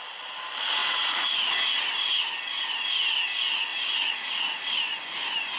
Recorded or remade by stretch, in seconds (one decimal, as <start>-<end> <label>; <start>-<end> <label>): 0.0-0.8 recorded; 0.8-1.5 remade; 1.5-3.7 recorded; 3.7-4.8 remade; 4.8-5.6 recorded